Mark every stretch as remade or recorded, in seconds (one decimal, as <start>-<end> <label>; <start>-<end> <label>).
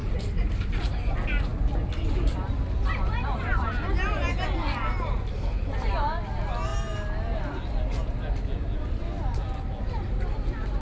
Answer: 0.0-10.8 recorded